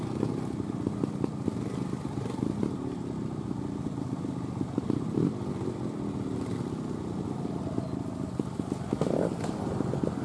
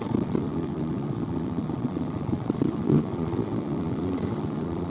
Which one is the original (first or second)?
first